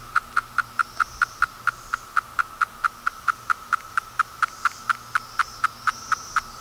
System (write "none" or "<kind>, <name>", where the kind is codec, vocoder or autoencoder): none